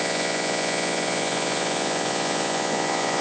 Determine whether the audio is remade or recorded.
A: remade